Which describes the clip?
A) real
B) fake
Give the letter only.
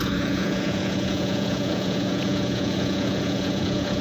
B